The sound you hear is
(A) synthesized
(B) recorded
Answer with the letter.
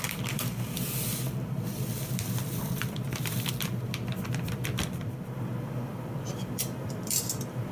A